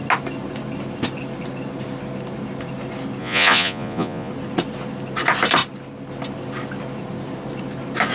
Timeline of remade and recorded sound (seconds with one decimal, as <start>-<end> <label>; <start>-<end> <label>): 0.0-3.2 recorded; 3.2-4.3 remade; 4.3-8.1 recorded